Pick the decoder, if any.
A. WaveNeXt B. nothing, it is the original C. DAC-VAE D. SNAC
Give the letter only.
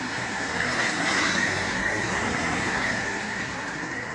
D